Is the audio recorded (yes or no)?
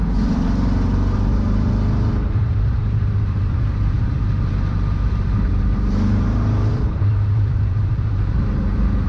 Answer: no